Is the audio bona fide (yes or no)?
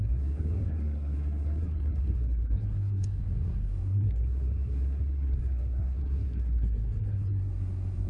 no